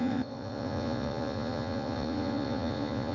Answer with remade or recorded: remade